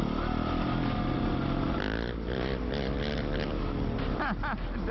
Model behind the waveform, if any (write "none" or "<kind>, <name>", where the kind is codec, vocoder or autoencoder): none